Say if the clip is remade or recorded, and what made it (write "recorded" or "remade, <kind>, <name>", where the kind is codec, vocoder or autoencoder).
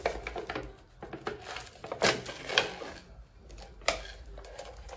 recorded